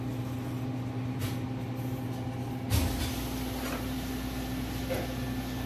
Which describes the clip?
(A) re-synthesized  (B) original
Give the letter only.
B